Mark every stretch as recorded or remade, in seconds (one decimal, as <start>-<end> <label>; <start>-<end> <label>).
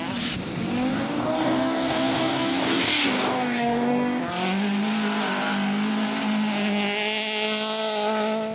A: 0.0-0.9 recorded; 0.9-4.2 remade; 4.2-8.5 recorded